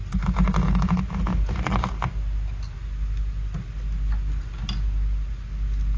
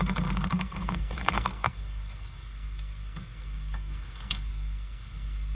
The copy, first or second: second